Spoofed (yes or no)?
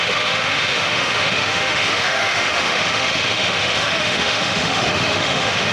yes